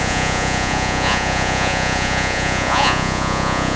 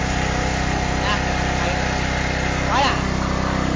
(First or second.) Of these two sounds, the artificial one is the first